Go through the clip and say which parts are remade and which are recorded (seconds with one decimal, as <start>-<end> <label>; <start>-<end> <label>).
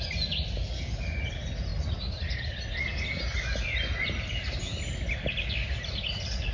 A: 0.0-6.5 recorded